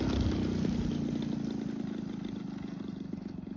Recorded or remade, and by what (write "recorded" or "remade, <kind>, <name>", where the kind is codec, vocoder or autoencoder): recorded